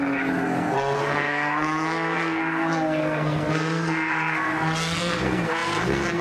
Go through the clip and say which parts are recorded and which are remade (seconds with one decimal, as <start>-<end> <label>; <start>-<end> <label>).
0.0-6.2 remade